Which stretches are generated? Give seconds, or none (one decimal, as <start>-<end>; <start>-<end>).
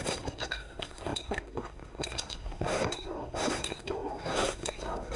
0.0-5.2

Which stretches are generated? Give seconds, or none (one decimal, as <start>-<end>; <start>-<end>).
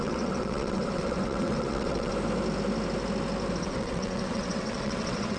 0.0-2.1; 3.6-5.4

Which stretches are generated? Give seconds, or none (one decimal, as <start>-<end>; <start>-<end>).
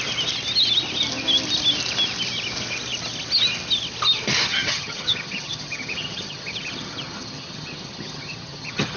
4.5-9.0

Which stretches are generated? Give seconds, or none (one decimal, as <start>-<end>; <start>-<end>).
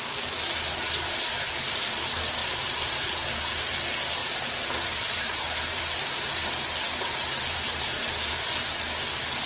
2.4-3.7; 4.2-8.3